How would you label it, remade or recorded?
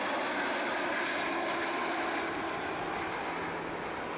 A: recorded